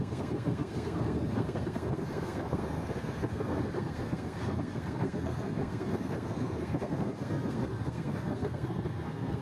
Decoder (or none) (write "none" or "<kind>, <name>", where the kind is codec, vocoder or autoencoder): codec, SNAC